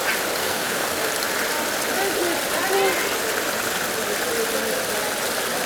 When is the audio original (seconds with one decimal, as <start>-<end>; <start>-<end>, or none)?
0.0-0.4; 1.1-5.7